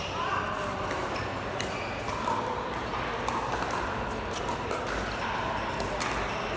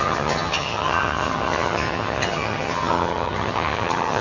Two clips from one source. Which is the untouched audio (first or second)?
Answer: first